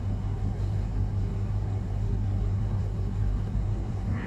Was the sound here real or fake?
fake